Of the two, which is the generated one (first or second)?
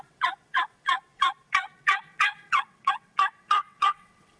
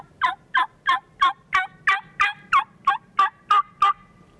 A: first